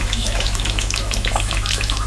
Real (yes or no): no